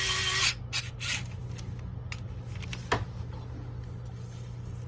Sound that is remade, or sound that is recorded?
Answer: recorded